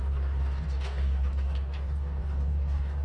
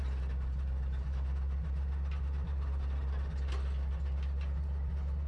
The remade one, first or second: first